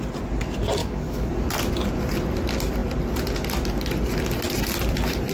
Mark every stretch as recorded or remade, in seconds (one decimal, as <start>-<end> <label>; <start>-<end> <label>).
0.0-0.8 recorded; 0.8-1.3 remade; 1.3-5.3 recorded